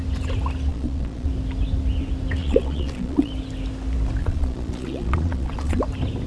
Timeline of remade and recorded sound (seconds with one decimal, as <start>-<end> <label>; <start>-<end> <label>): 0.0-0.7 recorded; 0.7-1.3 remade; 1.3-2.4 recorded; 2.4-3.3 remade; 3.3-4.2 recorded; 4.2-5.8 remade; 5.8-6.3 recorded